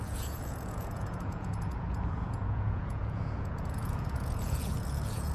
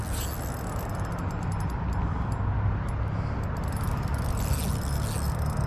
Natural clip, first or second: second